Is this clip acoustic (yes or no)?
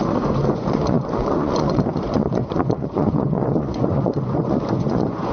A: no